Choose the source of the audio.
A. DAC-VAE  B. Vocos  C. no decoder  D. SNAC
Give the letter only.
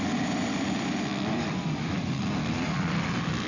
C